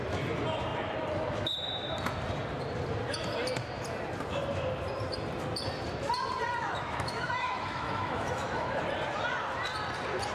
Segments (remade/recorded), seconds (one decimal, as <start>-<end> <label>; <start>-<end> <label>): 0.0-6.6 recorded; 6.6-8.8 remade; 8.8-10.3 recorded